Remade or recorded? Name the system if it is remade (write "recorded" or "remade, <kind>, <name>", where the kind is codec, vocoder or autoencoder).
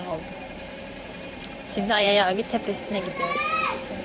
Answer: remade, vocoder, BigVGAN v2